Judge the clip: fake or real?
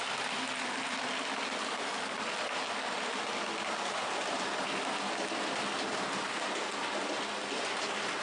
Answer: real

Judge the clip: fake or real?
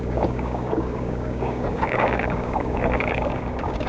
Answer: fake